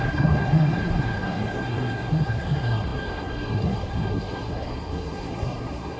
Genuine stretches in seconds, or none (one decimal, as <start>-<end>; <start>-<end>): none